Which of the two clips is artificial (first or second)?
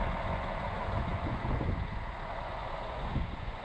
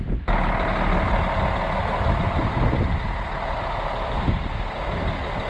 first